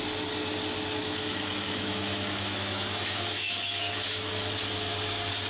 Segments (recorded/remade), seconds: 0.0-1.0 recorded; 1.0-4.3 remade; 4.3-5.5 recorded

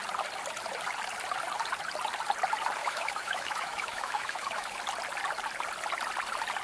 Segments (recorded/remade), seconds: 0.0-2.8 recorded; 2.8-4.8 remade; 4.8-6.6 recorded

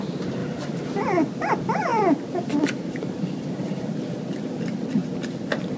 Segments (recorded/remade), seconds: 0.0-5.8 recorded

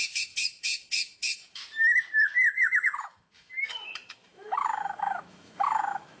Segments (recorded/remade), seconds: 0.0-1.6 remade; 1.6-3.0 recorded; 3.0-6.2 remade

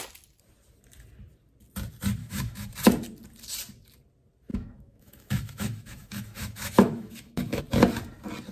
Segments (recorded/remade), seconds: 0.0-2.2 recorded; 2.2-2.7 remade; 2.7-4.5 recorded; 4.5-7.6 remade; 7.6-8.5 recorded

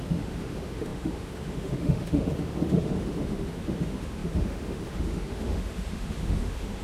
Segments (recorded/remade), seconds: 0.0-6.8 remade